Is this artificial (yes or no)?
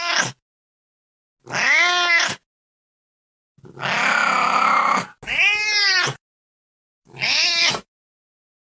no